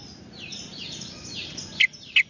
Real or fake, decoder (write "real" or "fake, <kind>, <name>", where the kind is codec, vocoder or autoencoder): real